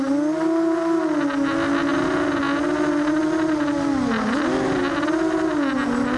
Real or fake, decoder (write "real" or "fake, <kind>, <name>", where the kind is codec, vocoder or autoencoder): real